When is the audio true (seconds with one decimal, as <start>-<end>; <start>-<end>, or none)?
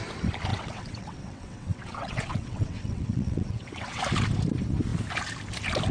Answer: 0.0-0.5; 4.0-5.9